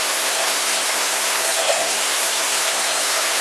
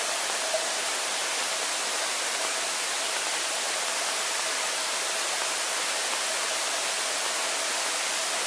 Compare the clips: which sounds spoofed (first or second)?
first